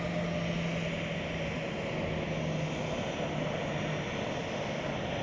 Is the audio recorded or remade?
recorded